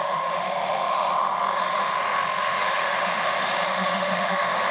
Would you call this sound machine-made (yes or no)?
yes